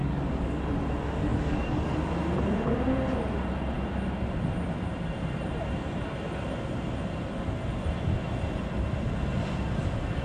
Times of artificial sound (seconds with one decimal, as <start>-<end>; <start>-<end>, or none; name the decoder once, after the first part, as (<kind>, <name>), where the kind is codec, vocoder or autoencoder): 0.0-0.6 (codec, DAC); 1.3-2.1